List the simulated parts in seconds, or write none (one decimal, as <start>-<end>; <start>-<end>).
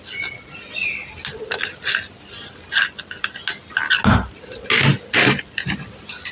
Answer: none